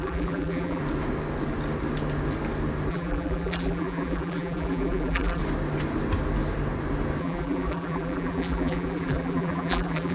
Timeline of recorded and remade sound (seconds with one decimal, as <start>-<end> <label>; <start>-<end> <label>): 0.0-0.8 remade; 0.8-2.9 recorded; 2.9-5.4 remade; 5.4-7.2 recorded; 7.2-10.1 remade